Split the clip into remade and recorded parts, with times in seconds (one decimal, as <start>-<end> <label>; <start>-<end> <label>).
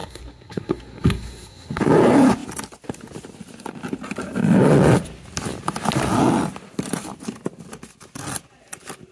0.0-1.8 remade; 1.8-9.1 recorded